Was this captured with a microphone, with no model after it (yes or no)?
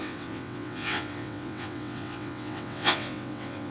no